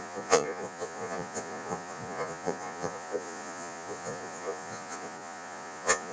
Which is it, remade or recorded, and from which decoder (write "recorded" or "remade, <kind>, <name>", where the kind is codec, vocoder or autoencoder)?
remade, vocoder, Vocos